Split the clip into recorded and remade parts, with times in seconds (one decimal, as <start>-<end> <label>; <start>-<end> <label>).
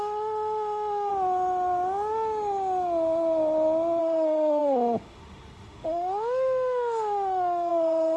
0.0-1.1 remade; 1.1-4.0 recorded; 4.0-8.2 remade